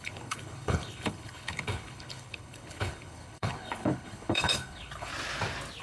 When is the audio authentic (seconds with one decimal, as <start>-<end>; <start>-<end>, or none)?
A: 5.1-5.8